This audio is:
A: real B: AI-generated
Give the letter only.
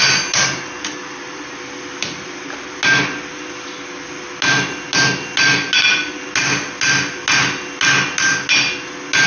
A